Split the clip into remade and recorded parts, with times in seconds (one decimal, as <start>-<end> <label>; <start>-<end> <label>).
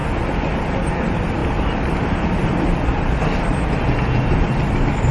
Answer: 0.0-5.1 recorded